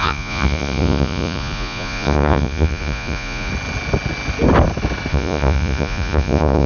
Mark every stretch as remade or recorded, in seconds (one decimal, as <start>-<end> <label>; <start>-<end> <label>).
0.0-3.5 remade; 3.5-5.1 recorded; 5.1-6.7 remade